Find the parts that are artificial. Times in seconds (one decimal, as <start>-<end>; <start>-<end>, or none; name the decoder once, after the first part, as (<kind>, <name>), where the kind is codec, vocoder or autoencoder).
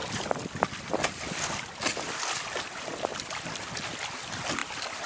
3.1-3.7 (vocoder, BigVGAN v2); 4.6-5.1